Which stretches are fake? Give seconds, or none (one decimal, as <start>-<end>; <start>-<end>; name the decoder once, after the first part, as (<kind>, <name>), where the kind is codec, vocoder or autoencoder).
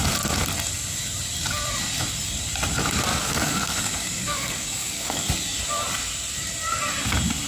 3.1-5.3 (codec, DAC)